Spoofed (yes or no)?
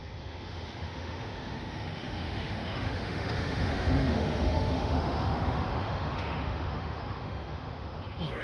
yes